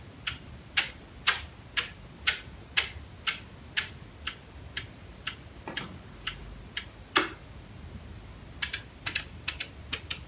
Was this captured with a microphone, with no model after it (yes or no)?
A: yes